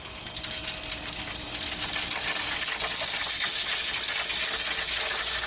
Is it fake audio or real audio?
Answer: real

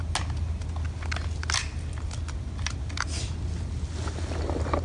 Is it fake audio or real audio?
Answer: real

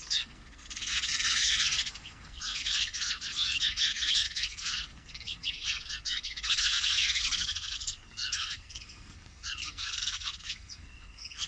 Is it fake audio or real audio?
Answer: fake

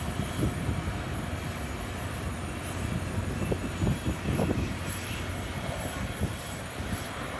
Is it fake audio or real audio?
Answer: real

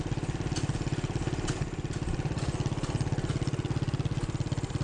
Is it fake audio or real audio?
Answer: real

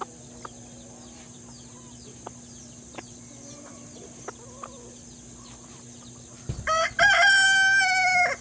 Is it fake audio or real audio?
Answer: real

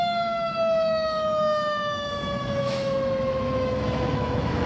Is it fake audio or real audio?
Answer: fake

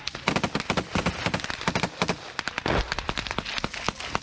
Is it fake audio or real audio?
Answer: real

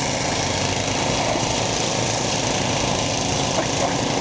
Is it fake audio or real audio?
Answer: real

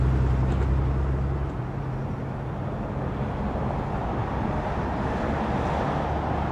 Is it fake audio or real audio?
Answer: real